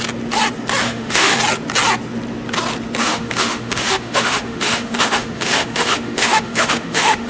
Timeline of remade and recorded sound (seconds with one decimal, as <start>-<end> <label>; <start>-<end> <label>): 0.0-0.8 recorded; 0.8-1.4 remade; 1.4-3.0 recorded; 3.0-7.3 remade